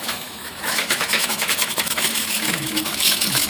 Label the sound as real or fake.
fake